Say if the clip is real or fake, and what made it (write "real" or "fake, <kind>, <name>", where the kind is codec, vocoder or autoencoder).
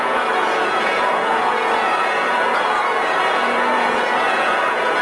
fake, vocoder, Vocos